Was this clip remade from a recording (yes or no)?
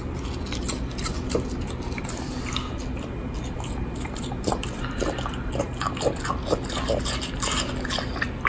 no